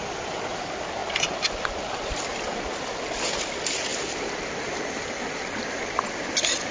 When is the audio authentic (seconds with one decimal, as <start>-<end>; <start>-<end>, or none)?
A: 0.0-6.7